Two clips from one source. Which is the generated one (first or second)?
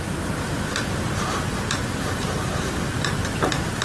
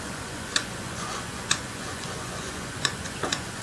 second